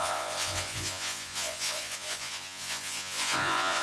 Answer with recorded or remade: remade